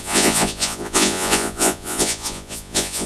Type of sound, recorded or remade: remade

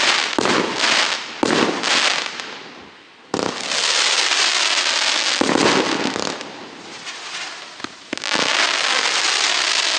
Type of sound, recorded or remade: recorded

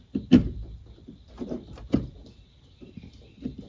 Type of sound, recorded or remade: remade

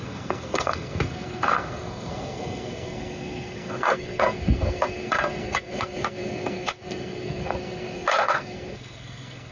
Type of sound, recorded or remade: remade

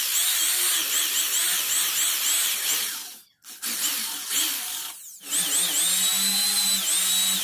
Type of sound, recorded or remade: recorded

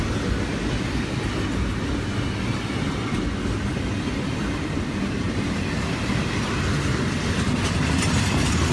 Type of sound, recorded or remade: recorded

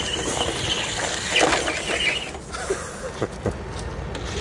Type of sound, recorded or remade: recorded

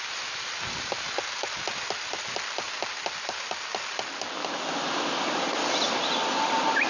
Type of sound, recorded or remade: recorded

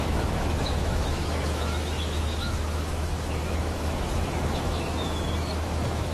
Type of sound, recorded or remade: remade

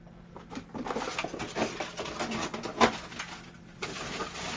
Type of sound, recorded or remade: recorded